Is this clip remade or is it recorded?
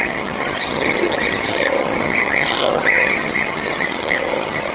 remade